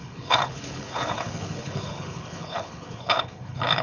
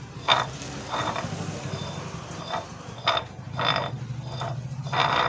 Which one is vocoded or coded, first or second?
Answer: first